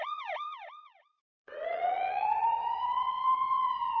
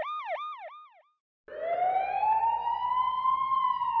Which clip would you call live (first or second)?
second